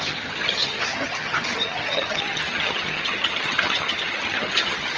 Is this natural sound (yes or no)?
no